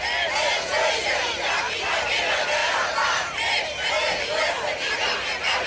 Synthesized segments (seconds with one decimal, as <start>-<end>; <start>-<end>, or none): 2.6-3.9